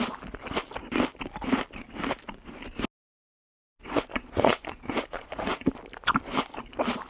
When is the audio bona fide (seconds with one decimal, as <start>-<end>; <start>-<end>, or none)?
0.0-3.6; 5.8-7.1